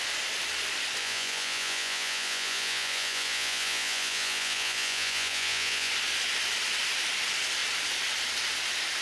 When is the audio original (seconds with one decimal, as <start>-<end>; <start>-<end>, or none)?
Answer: 0.0-1.0; 5.9-9.0